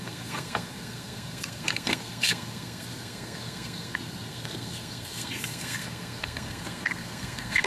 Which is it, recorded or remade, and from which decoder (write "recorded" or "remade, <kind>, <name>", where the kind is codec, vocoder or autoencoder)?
remade, codec, SNAC